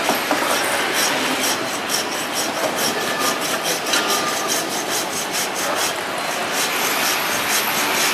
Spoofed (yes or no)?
no